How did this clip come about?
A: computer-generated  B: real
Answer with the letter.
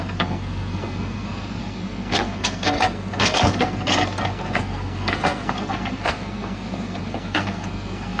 A